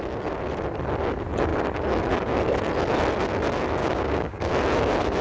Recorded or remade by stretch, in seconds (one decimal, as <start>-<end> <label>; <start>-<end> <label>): 0.0-3.8 recorded; 3.8-4.5 remade; 4.5-5.2 recorded